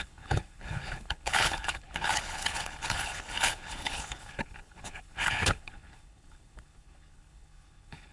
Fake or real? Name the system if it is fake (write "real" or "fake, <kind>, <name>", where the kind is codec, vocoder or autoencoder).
fake, codec, HILCodec